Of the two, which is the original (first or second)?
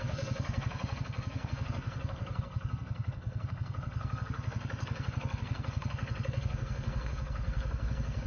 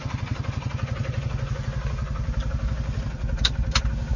second